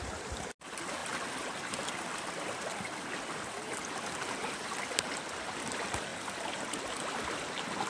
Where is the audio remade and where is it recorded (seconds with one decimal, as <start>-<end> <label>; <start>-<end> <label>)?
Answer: 0.0-7.9 recorded